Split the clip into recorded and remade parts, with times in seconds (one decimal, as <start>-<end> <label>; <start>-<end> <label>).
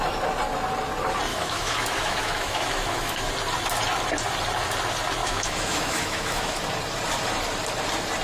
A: 0.0-1.3 recorded; 1.3-3.3 remade; 3.3-5.2 recorded; 5.2-6.6 remade; 6.6-8.2 recorded